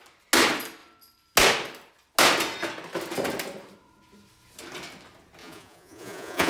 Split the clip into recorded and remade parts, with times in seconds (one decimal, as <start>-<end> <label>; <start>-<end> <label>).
0.0-5.4 recorded; 5.4-6.5 remade